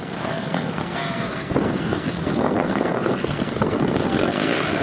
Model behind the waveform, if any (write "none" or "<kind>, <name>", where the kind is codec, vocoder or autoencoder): codec, SNAC